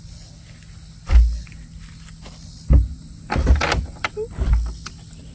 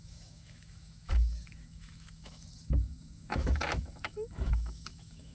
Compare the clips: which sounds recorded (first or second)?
first